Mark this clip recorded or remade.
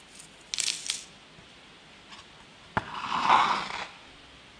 recorded